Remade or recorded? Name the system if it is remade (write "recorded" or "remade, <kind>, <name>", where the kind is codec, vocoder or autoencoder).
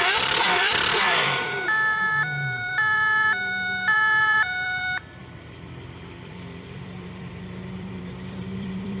remade, vocoder, BigVGAN v2